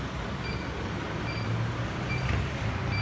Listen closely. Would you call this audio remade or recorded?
recorded